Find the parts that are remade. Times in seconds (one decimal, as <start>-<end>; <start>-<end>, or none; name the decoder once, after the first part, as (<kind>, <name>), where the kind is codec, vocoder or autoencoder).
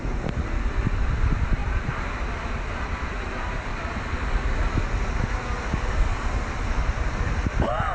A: 3.7-4.8 (vocoder, BigVGAN v2); 6.1-6.8